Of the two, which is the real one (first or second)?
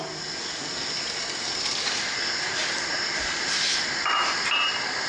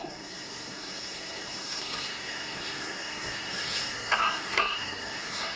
first